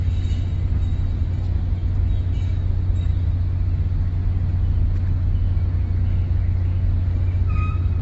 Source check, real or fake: real